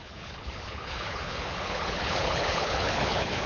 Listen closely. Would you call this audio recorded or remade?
remade